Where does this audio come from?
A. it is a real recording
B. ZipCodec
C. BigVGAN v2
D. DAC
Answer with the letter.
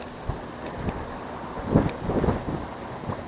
A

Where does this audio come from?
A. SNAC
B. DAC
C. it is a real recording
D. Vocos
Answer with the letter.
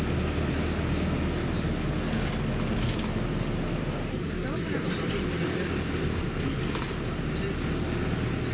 C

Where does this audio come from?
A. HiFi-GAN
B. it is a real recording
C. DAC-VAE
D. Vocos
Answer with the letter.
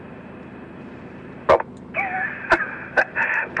B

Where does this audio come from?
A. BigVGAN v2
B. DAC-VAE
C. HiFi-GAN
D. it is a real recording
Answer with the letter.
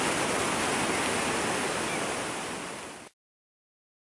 D